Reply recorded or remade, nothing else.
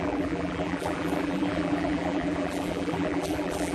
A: remade